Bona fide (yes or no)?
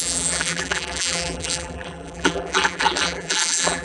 no